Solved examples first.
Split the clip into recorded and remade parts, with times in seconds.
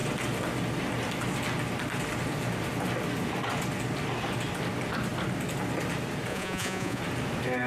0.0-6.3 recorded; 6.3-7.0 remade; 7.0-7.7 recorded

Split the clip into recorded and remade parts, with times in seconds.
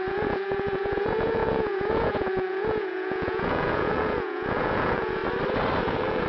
0.0-5.2 remade; 5.2-5.8 recorded; 5.8-6.3 remade